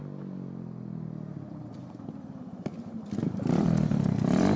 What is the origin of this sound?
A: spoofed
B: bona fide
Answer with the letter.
B